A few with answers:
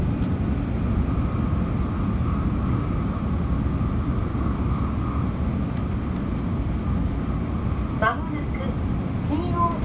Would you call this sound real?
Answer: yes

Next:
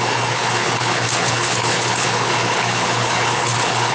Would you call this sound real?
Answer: no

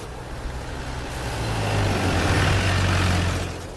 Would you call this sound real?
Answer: yes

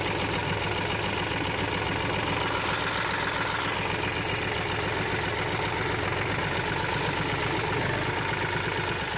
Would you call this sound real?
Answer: yes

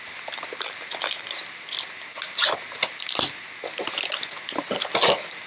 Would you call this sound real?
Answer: yes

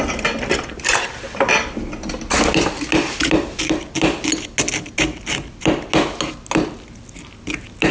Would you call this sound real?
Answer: yes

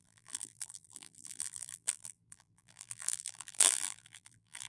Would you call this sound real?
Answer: no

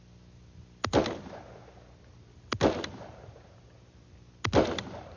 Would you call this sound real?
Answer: yes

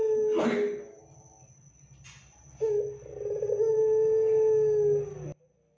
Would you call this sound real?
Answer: yes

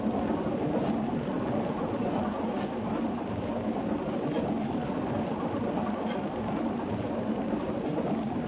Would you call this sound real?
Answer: yes